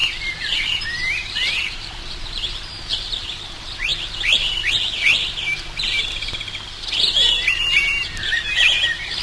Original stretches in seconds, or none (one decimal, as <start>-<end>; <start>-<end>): 3.9-7.8